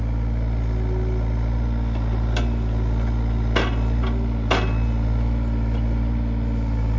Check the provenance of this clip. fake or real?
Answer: real